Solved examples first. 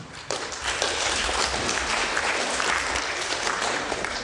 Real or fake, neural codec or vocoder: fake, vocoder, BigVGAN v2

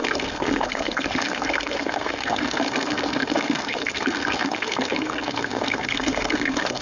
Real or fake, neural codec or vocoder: fake, codec, SNAC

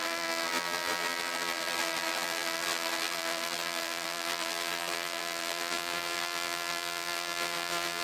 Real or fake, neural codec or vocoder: fake, vocoder, BigVGAN v2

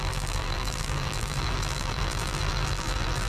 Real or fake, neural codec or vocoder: fake, vocoder, BigVGAN v2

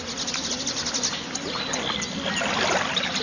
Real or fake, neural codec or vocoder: real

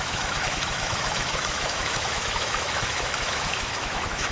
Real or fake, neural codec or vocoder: fake, autoencoder, DAC-VAE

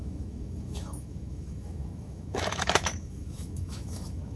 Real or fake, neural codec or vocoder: fake, autoencoder, DAC-VAE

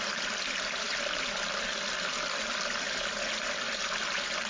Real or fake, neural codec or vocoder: real